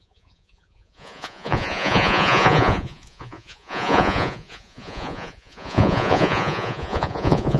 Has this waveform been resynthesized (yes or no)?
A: yes